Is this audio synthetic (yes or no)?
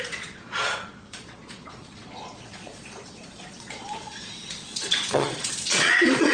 yes